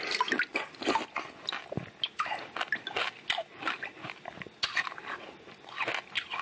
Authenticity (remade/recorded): recorded